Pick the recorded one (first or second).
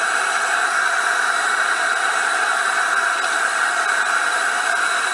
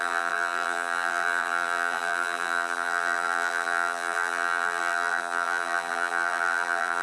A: first